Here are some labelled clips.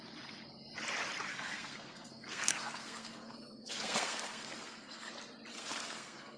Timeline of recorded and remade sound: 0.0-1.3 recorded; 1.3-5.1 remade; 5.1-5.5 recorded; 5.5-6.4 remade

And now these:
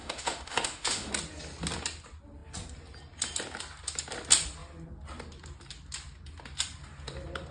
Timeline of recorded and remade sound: 0.0-1.1 remade; 1.1-7.5 recorded

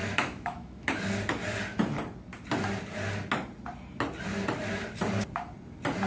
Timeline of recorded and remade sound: 0.0-0.9 remade; 0.9-6.1 recorded

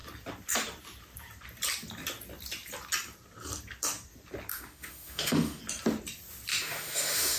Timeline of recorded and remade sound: 0.0-4.5 recorded; 4.5-5.6 remade; 5.6-6.5 recorded; 6.5-7.4 remade

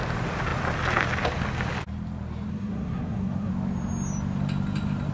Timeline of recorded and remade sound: 0.0-2.5 recorded; 2.5-3.5 remade; 3.5-5.1 recorded

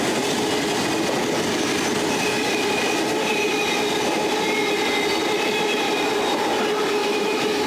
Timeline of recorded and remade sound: 0.0-7.0 recorded; 7.0-7.7 remade